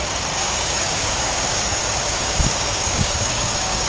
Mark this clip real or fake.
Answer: fake